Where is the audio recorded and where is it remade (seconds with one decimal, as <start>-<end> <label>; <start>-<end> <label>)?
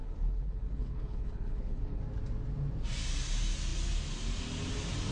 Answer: 0.0-2.0 remade; 2.0-5.1 recorded